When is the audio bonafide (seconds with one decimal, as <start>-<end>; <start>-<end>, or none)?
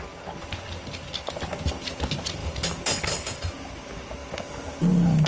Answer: 0.0-5.3